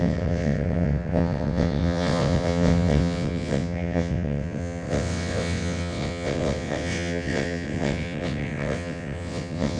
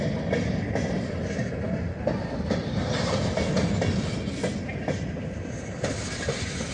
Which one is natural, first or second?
second